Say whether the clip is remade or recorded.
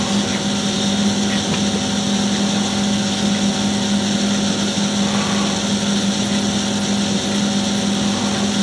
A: recorded